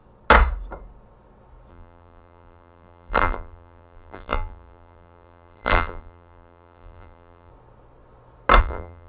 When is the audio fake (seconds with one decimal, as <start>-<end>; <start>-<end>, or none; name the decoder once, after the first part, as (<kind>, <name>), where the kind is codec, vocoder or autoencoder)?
1.7-7.5 (vocoder, BigVGAN v2); 8.6-9.1